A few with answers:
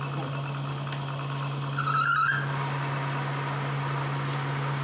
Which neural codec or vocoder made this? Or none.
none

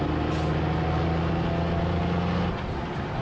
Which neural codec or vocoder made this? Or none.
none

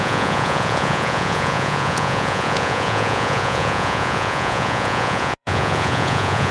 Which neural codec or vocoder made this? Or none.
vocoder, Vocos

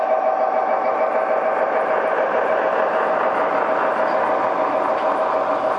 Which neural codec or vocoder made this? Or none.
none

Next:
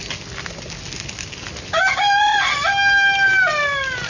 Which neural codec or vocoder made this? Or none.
none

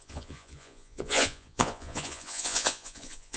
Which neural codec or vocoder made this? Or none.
vocoder, Vocos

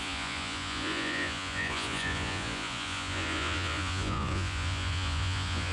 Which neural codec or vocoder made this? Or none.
vocoder, Vocos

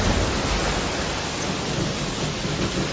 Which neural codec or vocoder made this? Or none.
none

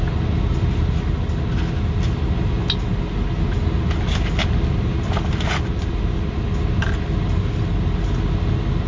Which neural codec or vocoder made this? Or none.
none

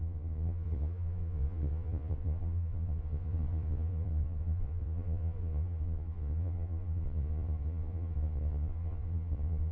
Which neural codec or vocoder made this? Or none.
vocoder, Vocos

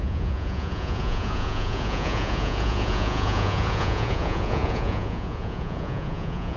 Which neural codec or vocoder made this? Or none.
vocoder, Vocos